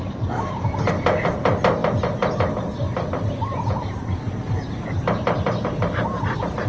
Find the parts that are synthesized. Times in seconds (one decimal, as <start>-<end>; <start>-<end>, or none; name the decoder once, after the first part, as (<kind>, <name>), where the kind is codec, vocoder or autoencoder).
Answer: 1.8-4.3 (vocoder, BigVGAN v2)